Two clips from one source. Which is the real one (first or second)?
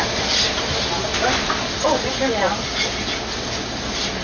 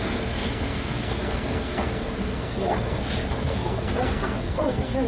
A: first